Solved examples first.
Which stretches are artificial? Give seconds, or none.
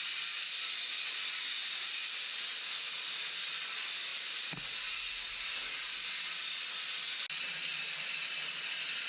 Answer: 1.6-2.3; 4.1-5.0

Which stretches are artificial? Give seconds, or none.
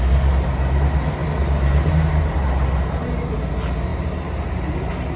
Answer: none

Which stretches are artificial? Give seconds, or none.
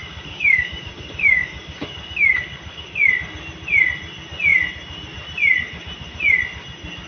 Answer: 0.0-3.1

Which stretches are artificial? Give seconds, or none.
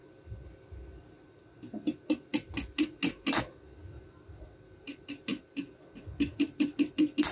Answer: none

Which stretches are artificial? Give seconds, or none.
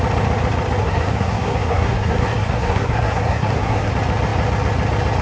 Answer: 0.8-3.9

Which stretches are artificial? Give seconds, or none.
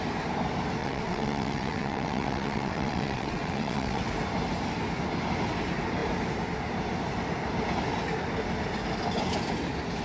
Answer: 0.8-4.1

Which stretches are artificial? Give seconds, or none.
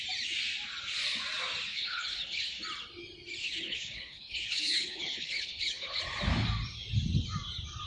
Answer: 1.7-2.6; 3.4-6.0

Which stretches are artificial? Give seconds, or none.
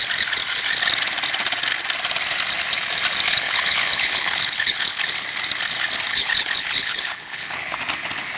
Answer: 3.3-5.0; 6.1-7.7